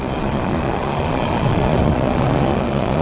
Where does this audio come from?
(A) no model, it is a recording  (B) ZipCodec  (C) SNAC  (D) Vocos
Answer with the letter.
D